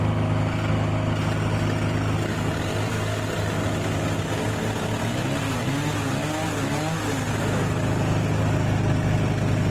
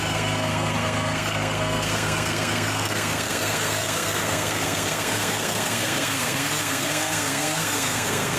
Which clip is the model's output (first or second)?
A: second